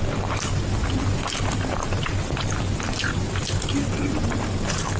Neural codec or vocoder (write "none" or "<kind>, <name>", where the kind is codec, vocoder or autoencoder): none